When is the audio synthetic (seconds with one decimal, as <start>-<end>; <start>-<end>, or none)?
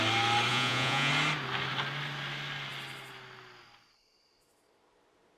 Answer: 0.5-1.1